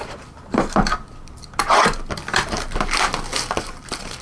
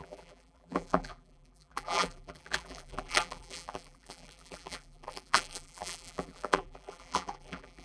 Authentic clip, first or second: first